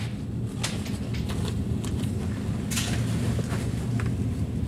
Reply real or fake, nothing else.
real